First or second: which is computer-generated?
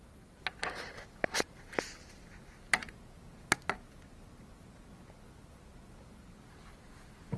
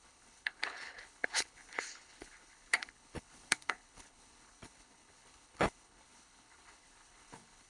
second